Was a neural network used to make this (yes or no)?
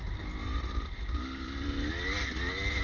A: no